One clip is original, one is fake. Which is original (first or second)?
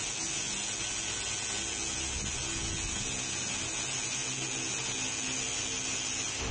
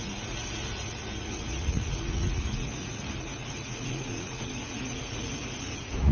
first